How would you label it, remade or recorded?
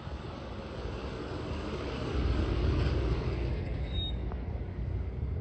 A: remade